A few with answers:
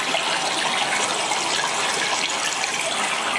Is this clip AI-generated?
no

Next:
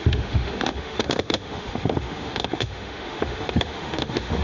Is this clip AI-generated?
yes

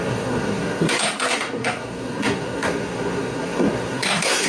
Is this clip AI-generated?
yes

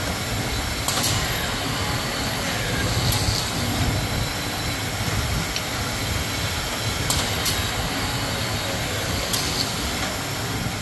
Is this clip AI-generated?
no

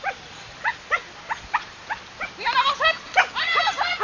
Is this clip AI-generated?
no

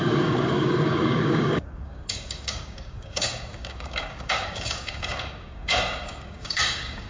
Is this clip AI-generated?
yes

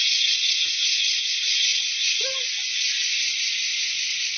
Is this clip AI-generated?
no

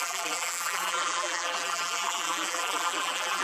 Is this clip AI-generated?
yes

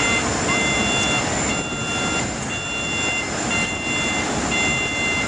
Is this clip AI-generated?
no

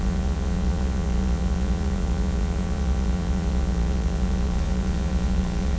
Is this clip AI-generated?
yes